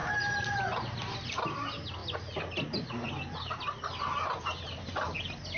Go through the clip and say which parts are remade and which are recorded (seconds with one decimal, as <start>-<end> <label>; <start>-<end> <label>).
0.0-5.6 recorded